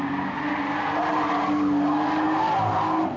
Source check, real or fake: real